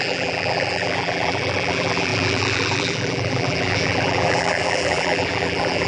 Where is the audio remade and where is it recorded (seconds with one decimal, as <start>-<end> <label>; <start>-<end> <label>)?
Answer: 0.0-5.9 remade